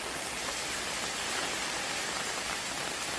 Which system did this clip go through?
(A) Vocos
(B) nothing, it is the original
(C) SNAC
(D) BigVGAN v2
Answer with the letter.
B